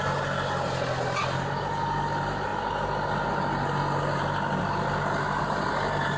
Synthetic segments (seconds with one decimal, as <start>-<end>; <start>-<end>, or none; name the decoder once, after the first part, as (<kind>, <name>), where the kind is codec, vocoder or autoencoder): none